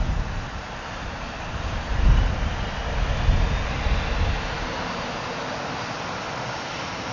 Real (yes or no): yes